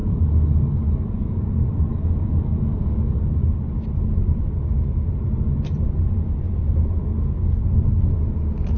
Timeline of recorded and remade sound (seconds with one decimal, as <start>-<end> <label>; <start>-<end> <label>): 0.0-1.4 remade; 1.4-1.9 recorded; 1.9-3.2 remade; 3.2-8.8 recorded